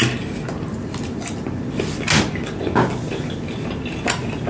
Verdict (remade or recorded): recorded